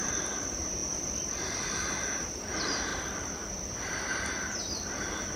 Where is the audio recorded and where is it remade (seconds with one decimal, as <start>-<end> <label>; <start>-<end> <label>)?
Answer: 0.0-0.8 remade; 0.8-2.4 recorded; 2.4-2.9 remade; 2.9-3.5 recorded; 3.5-4.6 remade; 4.6-5.4 recorded

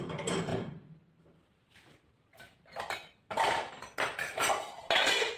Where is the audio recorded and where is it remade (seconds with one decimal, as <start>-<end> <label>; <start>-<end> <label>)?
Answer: 0.0-0.5 recorded; 0.5-2.8 remade; 2.8-3.2 recorded; 3.2-4.5 remade; 4.5-5.4 recorded

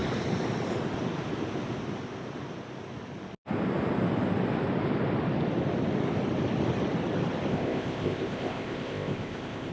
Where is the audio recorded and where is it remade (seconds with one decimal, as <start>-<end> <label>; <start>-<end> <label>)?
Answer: 0.0-7.5 recorded; 7.5-9.7 remade

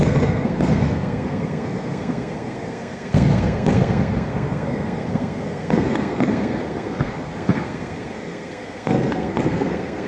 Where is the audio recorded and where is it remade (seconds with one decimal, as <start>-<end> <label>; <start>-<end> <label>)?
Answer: 0.0-10.1 remade

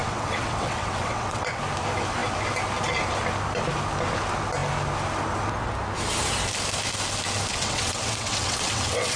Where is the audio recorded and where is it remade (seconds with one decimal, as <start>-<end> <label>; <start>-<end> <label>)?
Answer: 0.0-1.6 remade; 1.6-7.5 recorded; 7.5-9.2 remade

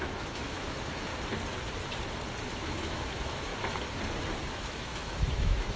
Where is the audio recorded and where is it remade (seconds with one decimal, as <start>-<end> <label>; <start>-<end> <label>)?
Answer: 0.0-1.1 remade; 1.1-2.6 recorded; 2.6-3.5 remade; 3.5-4.5 recorded; 4.5-5.8 remade

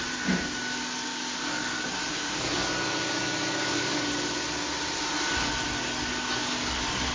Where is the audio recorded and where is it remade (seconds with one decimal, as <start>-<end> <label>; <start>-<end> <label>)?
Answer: 0.0-1.1 recorded; 1.1-1.8 remade; 1.8-2.6 recorded; 2.6-4.0 remade; 4.0-7.1 recorded